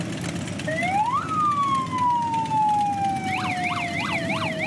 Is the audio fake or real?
real